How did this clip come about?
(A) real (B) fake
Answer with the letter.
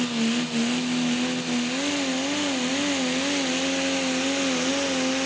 A